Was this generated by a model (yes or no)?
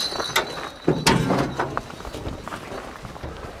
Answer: no